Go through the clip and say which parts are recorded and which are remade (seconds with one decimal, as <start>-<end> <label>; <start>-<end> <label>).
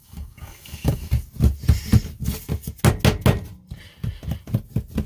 0.0-1.1 remade; 1.1-5.1 recorded